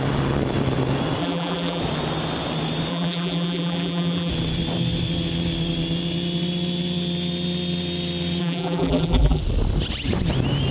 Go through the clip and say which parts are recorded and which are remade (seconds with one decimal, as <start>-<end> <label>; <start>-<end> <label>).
0.0-1.2 recorded; 1.2-1.8 remade; 1.8-2.9 recorded; 2.9-4.3 remade; 4.3-8.4 recorded; 8.4-9.4 remade; 9.4-10.7 recorded